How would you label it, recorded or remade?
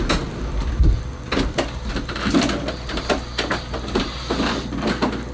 recorded